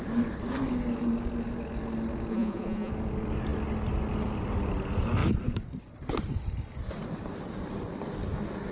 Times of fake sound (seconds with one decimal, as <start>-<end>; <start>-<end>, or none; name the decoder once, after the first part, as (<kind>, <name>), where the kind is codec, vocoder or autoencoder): 2.3-2.9 (vocoder, Vocos)